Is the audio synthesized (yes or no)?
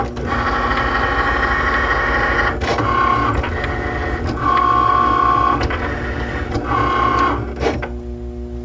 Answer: no